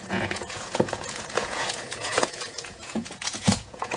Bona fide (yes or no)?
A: no